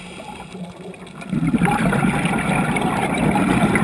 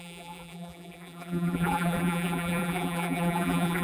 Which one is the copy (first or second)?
second